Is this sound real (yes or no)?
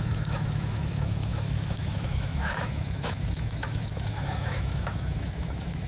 no